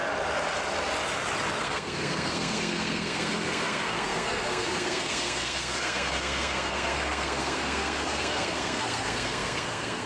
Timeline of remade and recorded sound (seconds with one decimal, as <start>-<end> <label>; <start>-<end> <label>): 0.0-1.6 recorded; 1.6-10.1 remade